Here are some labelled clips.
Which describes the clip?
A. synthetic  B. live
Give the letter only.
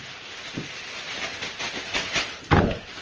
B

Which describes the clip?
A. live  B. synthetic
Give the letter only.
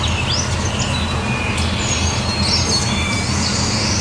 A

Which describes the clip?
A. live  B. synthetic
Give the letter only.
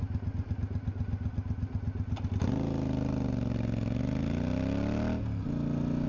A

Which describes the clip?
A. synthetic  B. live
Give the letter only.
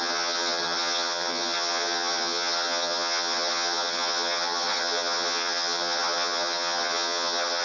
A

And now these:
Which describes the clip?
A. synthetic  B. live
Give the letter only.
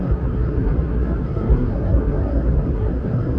A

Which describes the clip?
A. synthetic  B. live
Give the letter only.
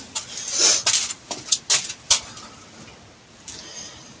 B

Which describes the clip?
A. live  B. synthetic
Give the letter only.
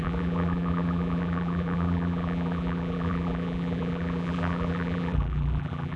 B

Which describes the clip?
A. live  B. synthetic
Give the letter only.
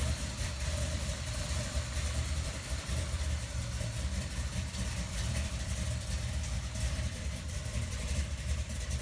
B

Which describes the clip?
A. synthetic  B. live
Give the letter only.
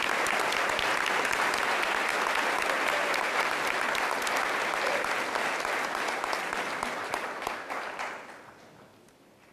B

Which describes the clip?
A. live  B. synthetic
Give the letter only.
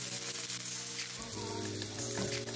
A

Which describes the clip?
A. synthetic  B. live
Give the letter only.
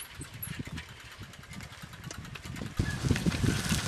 B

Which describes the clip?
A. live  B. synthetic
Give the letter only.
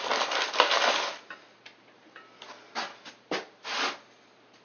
A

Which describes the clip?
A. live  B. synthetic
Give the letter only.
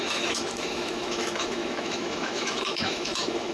B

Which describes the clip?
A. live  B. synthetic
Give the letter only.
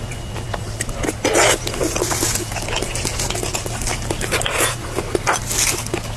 A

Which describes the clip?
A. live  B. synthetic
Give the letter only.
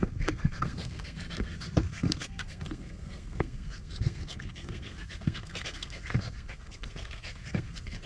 B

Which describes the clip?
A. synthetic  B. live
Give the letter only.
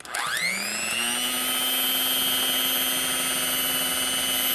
B